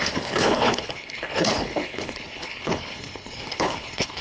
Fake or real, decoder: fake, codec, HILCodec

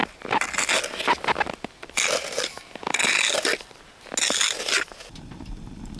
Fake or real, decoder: real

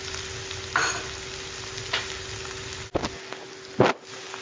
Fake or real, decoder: real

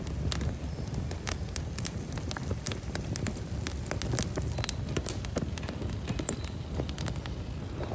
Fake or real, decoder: real